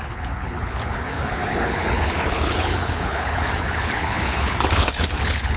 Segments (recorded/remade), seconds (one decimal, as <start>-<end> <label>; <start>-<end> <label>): 0.0-5.6 remade